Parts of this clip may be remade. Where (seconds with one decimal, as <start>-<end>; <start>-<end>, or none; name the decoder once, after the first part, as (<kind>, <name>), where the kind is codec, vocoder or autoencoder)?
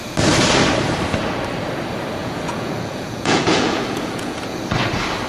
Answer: 2.2-4.6 (vocoder, Vocos)